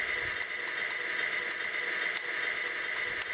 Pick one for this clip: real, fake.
real